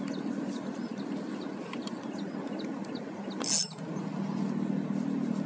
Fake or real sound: real